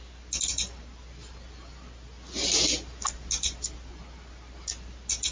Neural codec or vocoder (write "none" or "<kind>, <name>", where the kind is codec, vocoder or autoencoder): none